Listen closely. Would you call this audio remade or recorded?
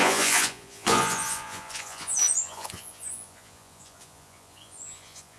remade